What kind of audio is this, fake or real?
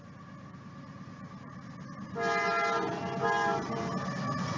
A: real